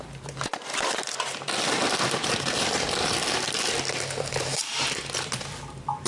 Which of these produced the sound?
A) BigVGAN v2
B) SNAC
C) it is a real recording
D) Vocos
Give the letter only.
A